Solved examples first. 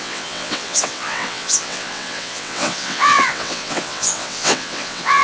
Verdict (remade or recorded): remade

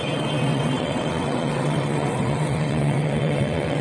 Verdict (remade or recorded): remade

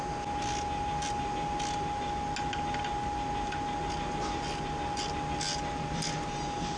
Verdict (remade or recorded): recorded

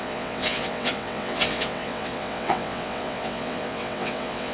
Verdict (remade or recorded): remade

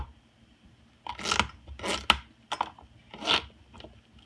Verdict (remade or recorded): recorded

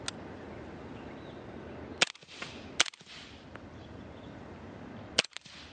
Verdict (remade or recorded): recorded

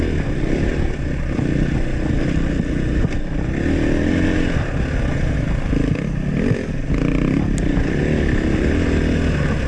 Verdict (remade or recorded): recorded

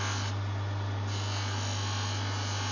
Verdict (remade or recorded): recorded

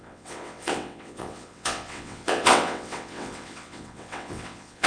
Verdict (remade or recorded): remade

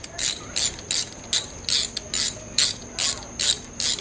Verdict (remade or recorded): recorded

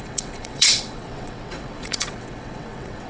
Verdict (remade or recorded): remade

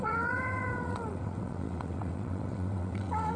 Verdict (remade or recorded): remade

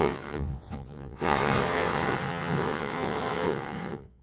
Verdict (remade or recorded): remade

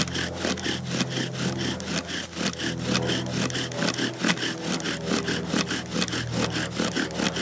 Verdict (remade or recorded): recorded